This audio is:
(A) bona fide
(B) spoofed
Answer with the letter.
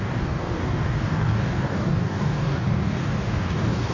B